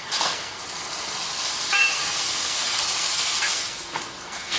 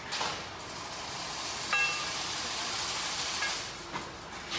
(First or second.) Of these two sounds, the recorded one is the second